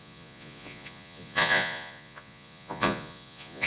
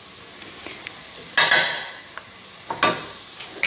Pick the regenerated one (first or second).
first